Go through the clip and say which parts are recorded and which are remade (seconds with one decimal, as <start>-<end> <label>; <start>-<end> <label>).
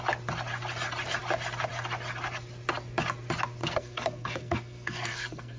0.0-3.6 recorded; 3.6-5.6 remade